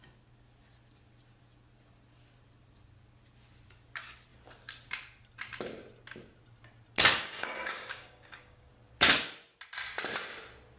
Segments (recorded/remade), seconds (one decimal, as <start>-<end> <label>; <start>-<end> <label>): 0.0-7.1 recorded; 7.1-8.7 remade; 8.7-10.8 recorded